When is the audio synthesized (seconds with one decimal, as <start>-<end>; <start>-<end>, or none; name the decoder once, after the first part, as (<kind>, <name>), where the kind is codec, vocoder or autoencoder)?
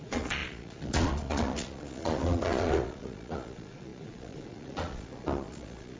0.0-6.0 (vocoder, Vocos)